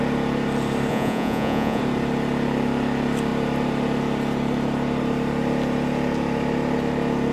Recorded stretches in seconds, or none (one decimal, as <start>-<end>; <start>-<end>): 0.0-0.9; 1.8-7.3

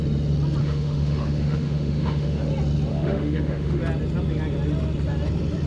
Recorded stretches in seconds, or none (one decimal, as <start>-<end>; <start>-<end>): 0.0-0.6; 2.5-2.9; 3.8-5.7

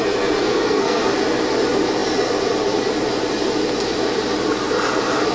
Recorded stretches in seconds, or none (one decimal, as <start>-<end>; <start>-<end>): 0.0-0.4; 1.0-5.3